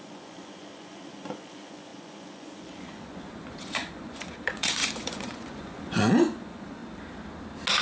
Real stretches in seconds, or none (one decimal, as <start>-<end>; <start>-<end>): 6.8-7.8